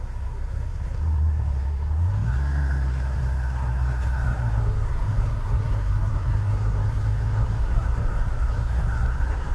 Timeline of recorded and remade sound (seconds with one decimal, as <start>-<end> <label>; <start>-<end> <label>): 0.0-9.5 remade